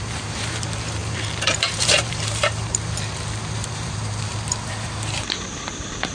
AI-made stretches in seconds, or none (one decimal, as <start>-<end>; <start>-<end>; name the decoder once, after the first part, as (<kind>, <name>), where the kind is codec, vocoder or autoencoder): 0.0-6.1 (vocoder, BigVGAN v2)